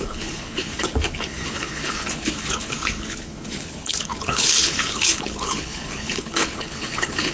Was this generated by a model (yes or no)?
yes